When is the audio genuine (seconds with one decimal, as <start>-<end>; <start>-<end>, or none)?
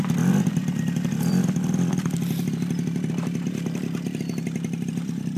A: 0.0-5.4